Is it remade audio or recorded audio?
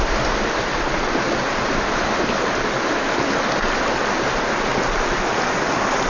recorded